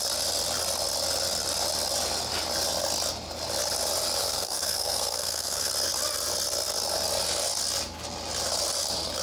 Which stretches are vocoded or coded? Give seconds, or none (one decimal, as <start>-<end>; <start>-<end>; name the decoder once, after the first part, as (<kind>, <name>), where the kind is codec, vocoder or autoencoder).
4.2-5.7 (codec, SNAC)

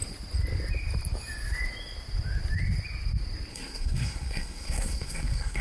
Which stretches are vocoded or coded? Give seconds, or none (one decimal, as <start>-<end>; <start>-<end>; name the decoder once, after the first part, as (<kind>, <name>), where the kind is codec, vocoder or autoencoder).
3.5-5.6 (codec, SNAC)

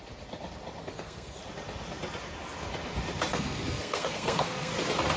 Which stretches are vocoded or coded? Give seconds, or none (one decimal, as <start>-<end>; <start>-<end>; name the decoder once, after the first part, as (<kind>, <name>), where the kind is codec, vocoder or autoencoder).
0.8-1.4 (codec, SNAC); 3.3-4.7

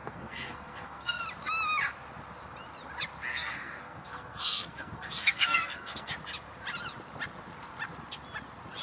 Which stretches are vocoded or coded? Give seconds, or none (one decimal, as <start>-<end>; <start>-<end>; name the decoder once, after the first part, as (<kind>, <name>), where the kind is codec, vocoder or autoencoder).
0.0-1.2 (codec, SNAC); 3.3-6.1

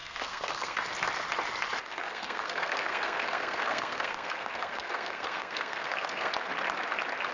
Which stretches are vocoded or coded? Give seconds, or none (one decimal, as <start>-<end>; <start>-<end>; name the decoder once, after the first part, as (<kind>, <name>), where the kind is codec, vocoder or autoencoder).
0.0-0.8 (codec, SNAC); 1.9-6.3

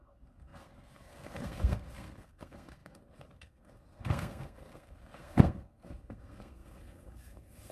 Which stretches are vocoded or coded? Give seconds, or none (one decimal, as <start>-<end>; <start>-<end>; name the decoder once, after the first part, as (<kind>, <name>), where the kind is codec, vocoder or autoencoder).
0.0-7.7 (codec, SNAC)

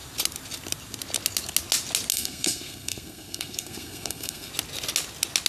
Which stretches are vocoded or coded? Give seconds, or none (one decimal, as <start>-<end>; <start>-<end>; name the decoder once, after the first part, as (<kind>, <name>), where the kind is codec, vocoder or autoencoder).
2.1-4.5 (codec, SNAC)

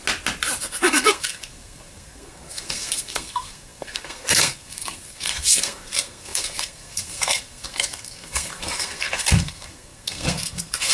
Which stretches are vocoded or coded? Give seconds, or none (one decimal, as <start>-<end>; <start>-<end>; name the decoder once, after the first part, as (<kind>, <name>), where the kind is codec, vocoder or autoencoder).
0.6-10.9 (codec, SNAC)